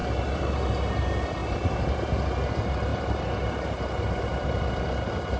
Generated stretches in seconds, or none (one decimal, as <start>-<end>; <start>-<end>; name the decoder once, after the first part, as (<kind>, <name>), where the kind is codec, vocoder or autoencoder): 0.0-0.6 (vocoder, BigVGAN v2); 1.4-2.1; 2.9-4.3

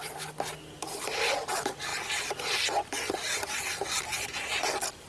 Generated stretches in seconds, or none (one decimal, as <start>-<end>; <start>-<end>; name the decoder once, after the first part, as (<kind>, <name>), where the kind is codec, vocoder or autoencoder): none

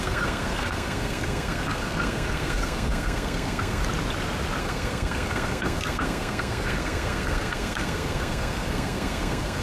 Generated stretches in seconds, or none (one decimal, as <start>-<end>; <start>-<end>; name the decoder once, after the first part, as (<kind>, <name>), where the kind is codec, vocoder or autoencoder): 0.0-3.8 (codec, SNAC); 4.6-9.6

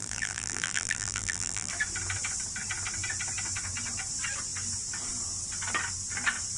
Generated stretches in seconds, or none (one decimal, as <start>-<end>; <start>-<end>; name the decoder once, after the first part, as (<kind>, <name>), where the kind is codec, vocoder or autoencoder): 0.0-1.7 (vocoder, BigVGAN v2)

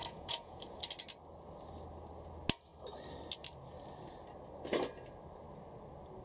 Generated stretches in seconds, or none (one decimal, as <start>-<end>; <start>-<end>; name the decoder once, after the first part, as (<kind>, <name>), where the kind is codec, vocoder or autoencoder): 0.0-0.8 (vocoder, Vocos)

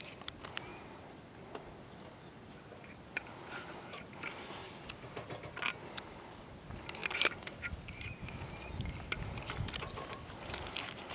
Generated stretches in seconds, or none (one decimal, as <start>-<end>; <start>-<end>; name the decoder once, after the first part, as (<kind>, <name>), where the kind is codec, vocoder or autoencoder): none

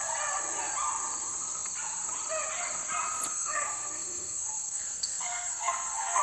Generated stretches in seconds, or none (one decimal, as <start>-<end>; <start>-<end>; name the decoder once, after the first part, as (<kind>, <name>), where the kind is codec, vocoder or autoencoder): 3.3-6.2 (codec, SNAC)